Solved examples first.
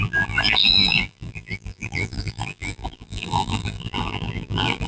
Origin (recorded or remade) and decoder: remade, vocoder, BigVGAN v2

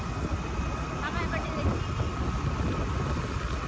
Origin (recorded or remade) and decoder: recorded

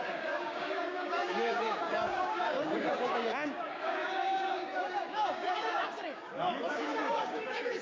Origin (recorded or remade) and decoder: remade, codec, DAC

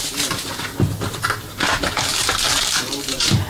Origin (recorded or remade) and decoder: recorded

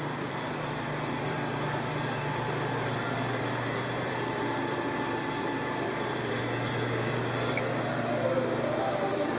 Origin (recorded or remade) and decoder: remade, vocoder, BigVGAN v2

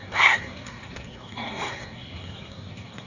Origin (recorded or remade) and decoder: remade, codec, SNAC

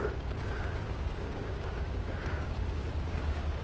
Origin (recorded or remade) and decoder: remade, codec, DAC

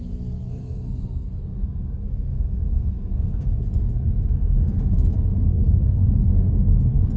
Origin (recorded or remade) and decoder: remade, codec, SNAC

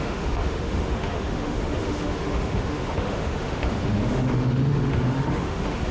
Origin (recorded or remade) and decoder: remade, autoencoder, DAC-VAE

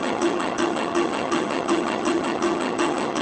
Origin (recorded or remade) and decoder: remade, vocoder, HiFi-GAN